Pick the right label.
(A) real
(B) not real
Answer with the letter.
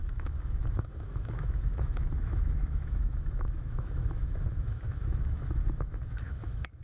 B